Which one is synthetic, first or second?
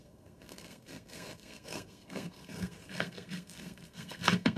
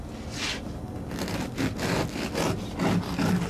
first